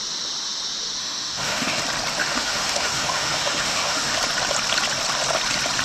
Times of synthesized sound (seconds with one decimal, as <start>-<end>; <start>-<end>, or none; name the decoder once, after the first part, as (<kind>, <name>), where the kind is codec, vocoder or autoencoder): 1.0-1.8 (autoencoder, DAC-VAE); 2.2-4.2